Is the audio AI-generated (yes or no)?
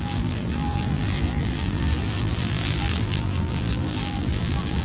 yes